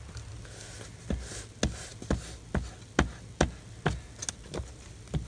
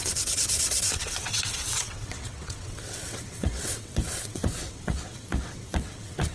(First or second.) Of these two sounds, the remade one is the second